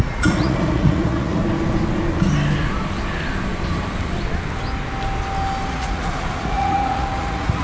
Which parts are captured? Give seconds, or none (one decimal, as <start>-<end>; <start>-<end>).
1.4-5.7